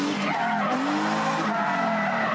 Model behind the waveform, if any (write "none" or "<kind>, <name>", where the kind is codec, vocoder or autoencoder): none